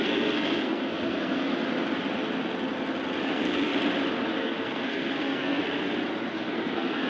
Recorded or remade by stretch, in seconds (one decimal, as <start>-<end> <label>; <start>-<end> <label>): 0.0-1.5 remade; 1.5-3.2 recorded; 3.2-3.7 remade; 3.7-4.4 recorded; 4.4-5.6 remade; 5.6-6.3 recorded; 6.3-7.1 remade